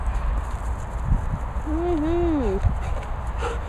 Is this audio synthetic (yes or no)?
no